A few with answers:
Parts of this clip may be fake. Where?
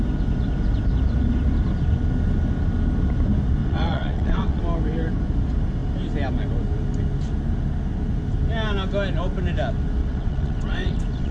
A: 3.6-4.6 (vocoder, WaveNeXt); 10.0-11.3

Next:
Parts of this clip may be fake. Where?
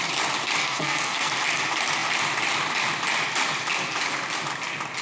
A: 0.6-1.3 (codec, SNAC)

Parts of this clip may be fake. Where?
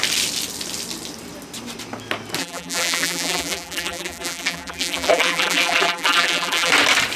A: 2.4-6.7 (vocoder, BigVGAN v2)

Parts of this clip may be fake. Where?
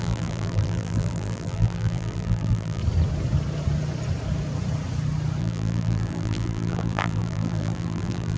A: 0.0-2.8 (vocoder, BigVGAN v2); 5.4-8.4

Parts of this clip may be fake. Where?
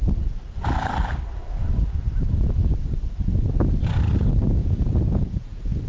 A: 4.6-5.9 (vocoder, Vocos)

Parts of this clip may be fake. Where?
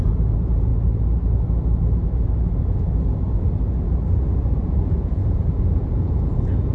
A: 0.0-0.7 (vocoder, Vocos); 4.4-6.7